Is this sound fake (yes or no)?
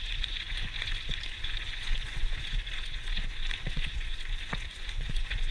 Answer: yes